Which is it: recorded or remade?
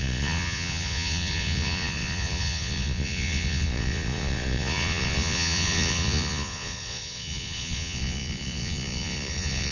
remade